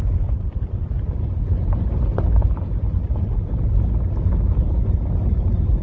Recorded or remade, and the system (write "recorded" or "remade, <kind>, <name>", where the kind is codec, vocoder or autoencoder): recorded